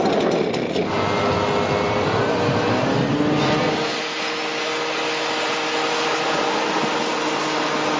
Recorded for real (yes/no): yes